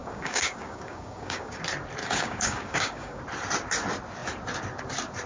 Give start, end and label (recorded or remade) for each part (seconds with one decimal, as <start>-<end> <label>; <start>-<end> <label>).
0.0-1.6 remade; 1.6-2.0 recorded; 2.0-3.2 remade; 3.2-5.3 recorded